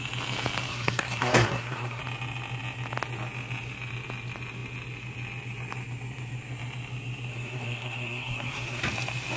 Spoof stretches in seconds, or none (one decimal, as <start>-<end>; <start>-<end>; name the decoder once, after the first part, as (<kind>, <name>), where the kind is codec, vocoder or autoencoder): 0.7-2.0 (codec, SNAC); 7.3-8.8